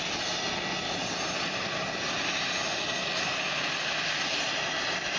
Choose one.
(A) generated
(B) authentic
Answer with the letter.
B